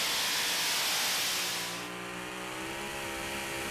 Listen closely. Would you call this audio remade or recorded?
recorded